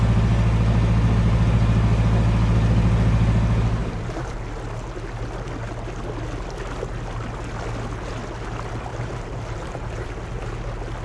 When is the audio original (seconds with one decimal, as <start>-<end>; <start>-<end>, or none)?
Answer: 0.0-3.8; 4.4-8.9; 10.1-11.0